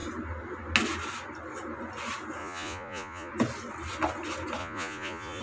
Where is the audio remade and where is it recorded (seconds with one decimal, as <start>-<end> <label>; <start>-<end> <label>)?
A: 0.0-2.4 recorded; 2.4-3.3 remade; 3.3-4.6 recorded; 4.6-5.4 remade